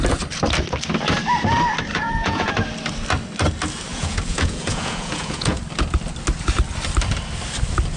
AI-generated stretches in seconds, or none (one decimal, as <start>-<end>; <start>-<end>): 1.9-2.5; 3.9-5.6